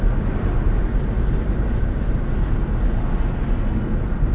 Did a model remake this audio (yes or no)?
no